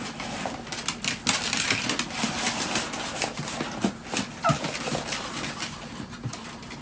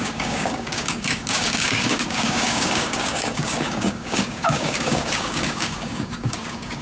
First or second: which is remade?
second